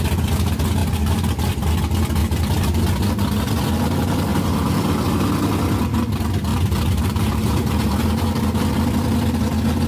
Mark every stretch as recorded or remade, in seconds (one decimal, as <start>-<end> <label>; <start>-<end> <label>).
0.0-0.8 recorded; 0.8-1.7 remade; 1.7-2.2 recorded; 2.2-2.8 remade; 2.8-4.3 recorded; 4.3-5.3 remade; 5.3-6.5 recorded; 6.5-8.7 remade; 8.7-9.9 recorded

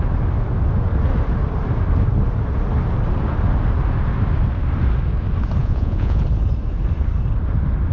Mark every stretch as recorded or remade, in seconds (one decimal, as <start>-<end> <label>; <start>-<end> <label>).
0.0-5.6 recorded; 5.6-6.2 remade; 6.2-7.9 recorded

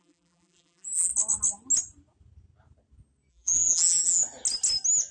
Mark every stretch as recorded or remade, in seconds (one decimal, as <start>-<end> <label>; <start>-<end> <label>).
0.0-1.1 remade; 1.1-3.3 recorded; 3.3-4.2 remade; 4.2-5.1 recorded

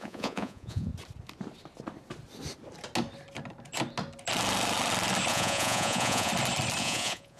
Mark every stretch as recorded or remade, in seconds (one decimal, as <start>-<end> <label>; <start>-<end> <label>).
0.0-0.9 remade; 0.9-5.3 recorded; 5.3-6.3 remade; 6.3-6.8 recorded; 6.8-7.4 remade

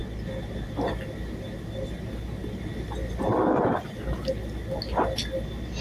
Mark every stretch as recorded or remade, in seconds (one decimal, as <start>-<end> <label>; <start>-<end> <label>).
0.0-5.8 recorded